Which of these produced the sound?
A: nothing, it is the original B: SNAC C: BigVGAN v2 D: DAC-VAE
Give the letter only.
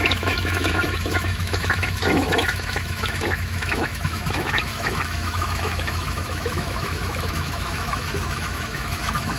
D